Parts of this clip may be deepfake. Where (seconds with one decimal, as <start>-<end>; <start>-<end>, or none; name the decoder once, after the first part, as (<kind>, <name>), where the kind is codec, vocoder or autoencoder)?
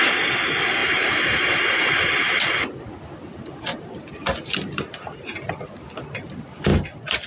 0.8-2.4 (vocoder, BigVGAN v2); 3.7-5.5